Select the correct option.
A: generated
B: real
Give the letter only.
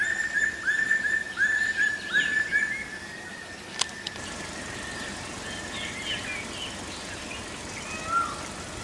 B